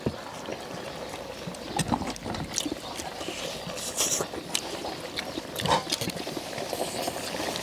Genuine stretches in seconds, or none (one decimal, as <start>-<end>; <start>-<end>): 0.0-7.6